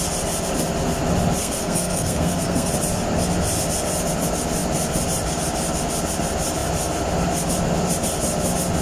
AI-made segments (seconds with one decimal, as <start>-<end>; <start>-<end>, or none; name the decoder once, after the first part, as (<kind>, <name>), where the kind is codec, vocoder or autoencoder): 1.4-2.7 (codec, SNAC)